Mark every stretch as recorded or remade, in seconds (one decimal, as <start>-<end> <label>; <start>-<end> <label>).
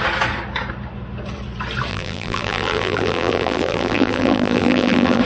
0.0-1.9 recorded; 1.9-5.2 remade